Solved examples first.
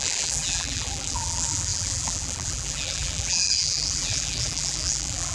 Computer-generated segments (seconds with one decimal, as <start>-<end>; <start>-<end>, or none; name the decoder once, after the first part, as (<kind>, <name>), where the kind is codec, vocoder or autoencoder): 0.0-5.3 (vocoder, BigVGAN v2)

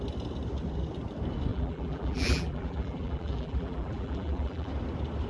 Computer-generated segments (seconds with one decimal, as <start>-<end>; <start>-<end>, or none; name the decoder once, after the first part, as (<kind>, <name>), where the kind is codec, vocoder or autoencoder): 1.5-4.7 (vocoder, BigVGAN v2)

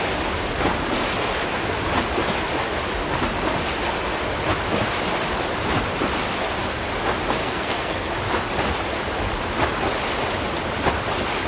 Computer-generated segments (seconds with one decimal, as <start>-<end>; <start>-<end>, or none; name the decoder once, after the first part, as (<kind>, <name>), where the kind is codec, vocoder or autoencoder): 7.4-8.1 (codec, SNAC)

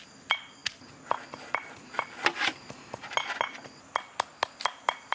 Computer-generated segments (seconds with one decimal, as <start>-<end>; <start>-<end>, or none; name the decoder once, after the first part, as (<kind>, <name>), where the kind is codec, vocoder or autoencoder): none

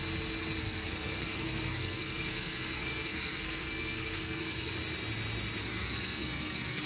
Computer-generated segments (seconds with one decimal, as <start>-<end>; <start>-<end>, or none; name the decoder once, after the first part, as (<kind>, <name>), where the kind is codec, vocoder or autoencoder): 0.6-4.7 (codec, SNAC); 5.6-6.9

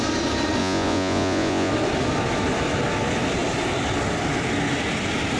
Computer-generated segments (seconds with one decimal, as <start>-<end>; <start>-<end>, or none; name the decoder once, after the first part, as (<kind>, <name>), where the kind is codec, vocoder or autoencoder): 0.6-1.7 (vocoder, Vocos)